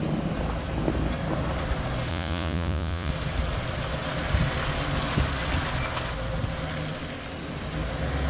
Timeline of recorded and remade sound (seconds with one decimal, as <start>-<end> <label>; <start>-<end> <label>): 0.0-2.1 recorded; 2.1-3.1 remade; 3.1-8.3 recorded